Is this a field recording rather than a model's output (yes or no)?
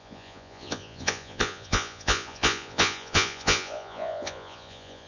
no